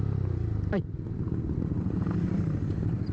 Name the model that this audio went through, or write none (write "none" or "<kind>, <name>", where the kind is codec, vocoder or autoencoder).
none